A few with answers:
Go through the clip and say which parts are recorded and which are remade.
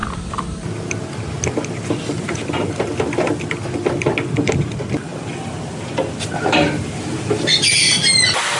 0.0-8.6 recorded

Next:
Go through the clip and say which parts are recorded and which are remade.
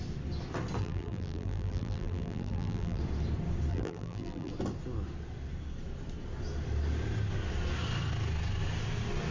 0.0-0.8 recorded; 0.8-3.0 remade; 3.0-3.7 recorded; 3.7-4.5 remade; 4.5-9.3 recorded